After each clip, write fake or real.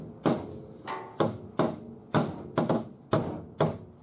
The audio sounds real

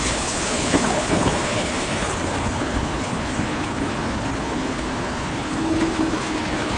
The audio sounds fake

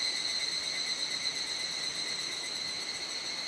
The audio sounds real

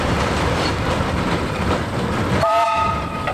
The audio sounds fake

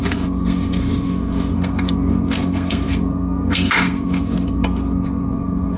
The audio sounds fake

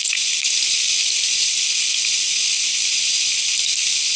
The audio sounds real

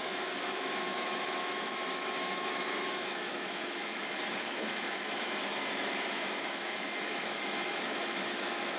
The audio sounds fake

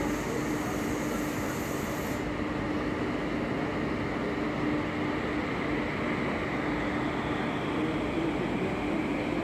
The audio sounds real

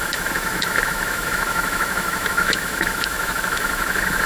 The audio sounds fake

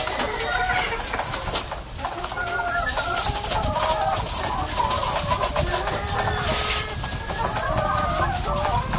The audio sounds real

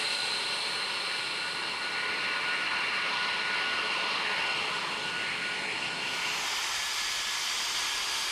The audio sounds real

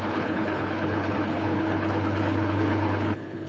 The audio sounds fake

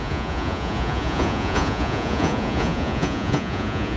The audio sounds fake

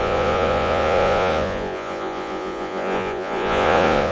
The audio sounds fake